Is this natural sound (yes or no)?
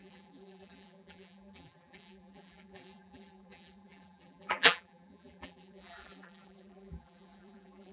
no